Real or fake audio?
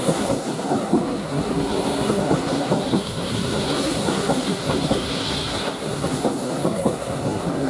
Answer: fake